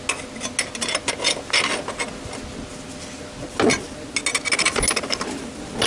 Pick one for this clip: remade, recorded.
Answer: recorded